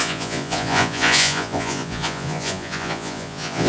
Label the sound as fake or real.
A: fake